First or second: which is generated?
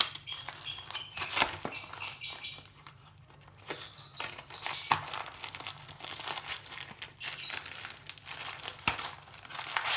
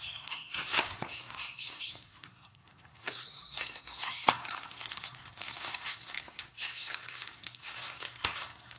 second